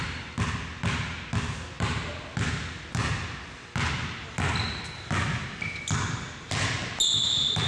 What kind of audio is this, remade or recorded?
recorded